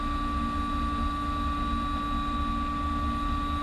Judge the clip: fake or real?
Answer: real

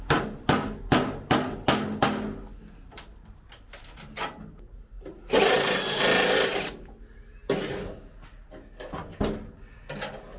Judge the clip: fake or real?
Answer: real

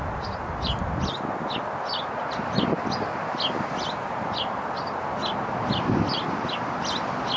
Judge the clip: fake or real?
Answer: real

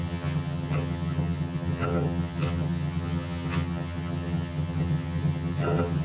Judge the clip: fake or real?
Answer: fake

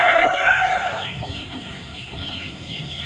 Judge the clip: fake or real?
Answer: fake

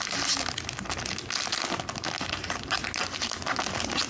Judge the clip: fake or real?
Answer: real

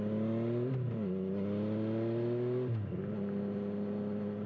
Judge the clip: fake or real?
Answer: real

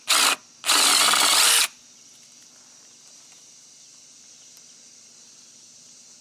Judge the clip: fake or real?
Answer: real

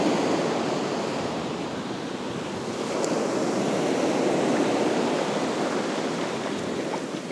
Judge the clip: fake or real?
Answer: real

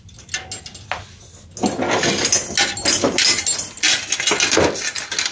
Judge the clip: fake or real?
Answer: real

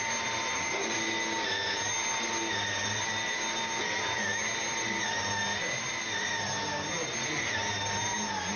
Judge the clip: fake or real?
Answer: real